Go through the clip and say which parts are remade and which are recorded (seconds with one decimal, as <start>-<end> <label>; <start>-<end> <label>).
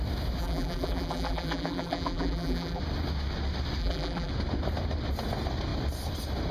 0.0-0.4 recorded; 0.4-2.8 remade; 2.8-3.8 recorded; 3.8-4.3 remade; 4.3-6.5 recorded